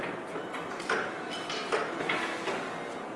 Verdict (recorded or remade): recorded